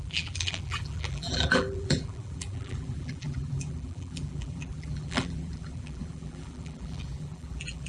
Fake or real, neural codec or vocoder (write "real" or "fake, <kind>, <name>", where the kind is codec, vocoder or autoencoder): fake, vocoder, BigVGAN v2